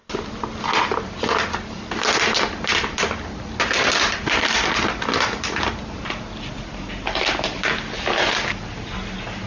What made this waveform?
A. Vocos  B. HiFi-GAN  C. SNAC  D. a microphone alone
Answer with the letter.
D